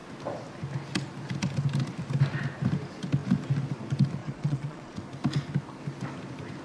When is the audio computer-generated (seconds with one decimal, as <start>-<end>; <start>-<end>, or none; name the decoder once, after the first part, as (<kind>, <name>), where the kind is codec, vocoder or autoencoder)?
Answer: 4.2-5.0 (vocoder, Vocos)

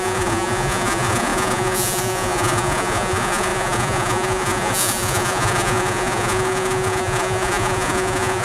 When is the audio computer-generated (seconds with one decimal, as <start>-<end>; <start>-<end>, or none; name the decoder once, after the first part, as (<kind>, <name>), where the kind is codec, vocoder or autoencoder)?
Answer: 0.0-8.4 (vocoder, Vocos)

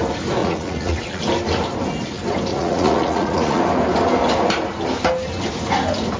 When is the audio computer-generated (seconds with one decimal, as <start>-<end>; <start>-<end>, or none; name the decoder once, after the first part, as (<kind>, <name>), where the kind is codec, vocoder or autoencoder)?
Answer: 0.4-1.2 (vocoder, Vocos); 2.5-3.6

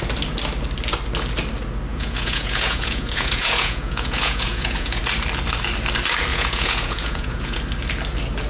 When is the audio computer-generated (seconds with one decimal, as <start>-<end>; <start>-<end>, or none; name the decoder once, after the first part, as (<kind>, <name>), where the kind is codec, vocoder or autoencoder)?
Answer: 1.9-5.0 (vocoder, Vocos); 6.3-7.6

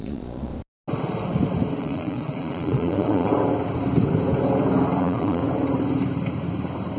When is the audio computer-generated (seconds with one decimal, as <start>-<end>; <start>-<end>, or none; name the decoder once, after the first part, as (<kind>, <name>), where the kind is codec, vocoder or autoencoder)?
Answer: 0.0-0.5 (vocoder, Vocos); 1.8-3.3; 5.0-5.4

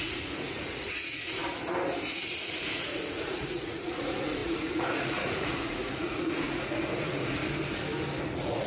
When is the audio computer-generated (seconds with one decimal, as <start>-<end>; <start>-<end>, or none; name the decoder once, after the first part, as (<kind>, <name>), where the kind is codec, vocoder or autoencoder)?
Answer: 0.0-1.4 (vocoder, Vocos); 2.4-7.4; 8.2-8.7

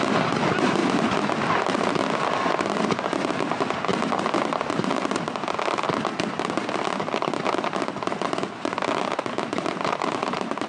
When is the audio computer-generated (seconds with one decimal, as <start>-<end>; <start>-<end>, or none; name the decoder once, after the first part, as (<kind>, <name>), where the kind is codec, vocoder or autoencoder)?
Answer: none